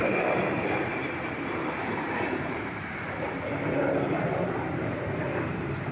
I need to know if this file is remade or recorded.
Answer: remade